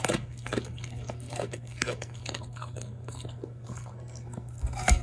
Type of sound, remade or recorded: remade